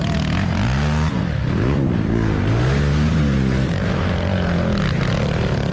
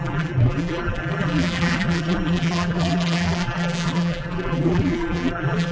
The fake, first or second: second